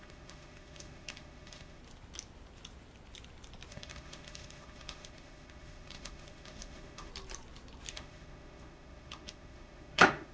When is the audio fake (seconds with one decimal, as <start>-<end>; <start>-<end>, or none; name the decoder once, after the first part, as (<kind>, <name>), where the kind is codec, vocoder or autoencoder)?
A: 0.0-1.8 (autoencoder, DAC-VAE); 3.7-7.1; 7.9-10.3

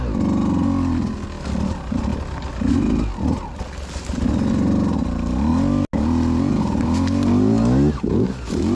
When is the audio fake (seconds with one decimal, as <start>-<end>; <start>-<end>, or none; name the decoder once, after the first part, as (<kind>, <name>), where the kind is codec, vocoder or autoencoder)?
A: none

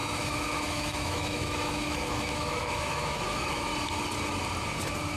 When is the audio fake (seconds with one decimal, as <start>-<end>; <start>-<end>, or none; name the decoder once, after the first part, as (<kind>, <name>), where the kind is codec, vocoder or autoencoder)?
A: 0.0-3.7 (autoencoder, DAC-VAE)

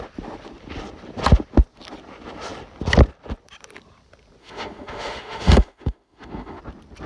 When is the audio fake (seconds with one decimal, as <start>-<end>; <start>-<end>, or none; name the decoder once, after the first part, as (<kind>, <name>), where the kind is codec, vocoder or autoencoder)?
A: 4.4-6.6 (autoencoder, DAC-VAE)

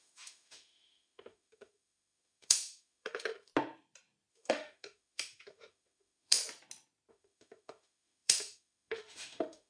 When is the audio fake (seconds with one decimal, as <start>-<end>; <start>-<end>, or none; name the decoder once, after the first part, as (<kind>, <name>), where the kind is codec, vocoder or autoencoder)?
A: 0.0-3.5 (autoencoder, DAC-VAE); 4.3-6.4; 7.1-9.7

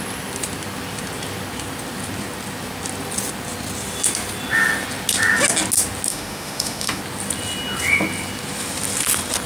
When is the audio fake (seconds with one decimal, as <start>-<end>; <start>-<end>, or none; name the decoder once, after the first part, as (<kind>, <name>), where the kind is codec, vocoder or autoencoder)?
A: 6.1-7.0 (autoencoder, DAC-VAE)

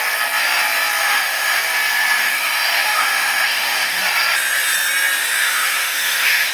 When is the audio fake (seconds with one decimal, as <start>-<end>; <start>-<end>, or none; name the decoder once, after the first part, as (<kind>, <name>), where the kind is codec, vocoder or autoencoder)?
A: 1.0-1.6 (autoencoder, DAC-VAE); 2.2-4.0; 5.2-6.5

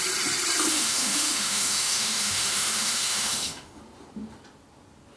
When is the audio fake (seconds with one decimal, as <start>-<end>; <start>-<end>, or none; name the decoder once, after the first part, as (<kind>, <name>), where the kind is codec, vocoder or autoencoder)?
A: 0.7-3.8 (autoencoder, DAC-VAE)